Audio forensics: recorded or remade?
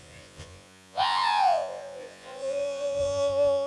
remade